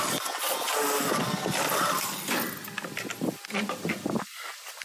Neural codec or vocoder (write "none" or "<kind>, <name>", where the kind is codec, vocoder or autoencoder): none